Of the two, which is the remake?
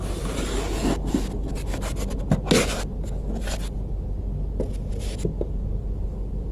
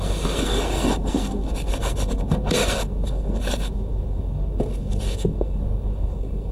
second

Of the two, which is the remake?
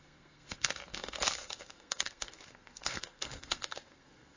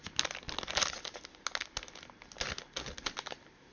first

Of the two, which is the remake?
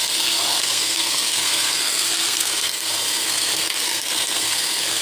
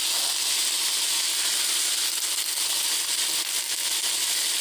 first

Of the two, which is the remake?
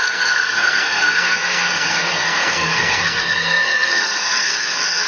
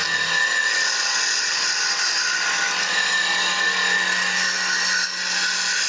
first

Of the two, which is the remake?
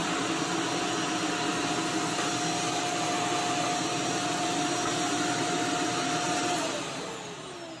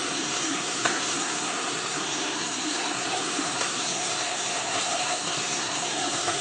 second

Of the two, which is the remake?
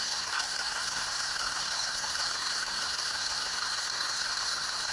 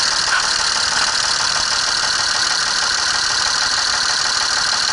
first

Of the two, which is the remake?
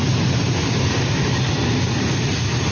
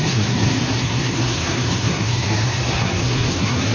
second